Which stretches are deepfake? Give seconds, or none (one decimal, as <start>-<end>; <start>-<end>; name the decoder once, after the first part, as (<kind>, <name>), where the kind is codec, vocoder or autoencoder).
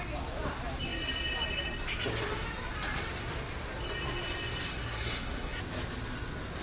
4.7-5.6 (codec, SNAC)